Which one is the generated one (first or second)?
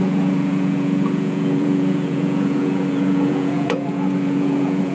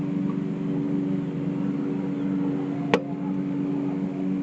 first